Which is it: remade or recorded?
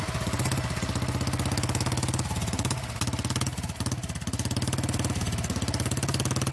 recorded